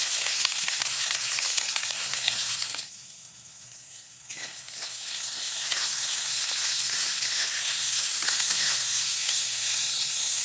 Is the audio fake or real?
fake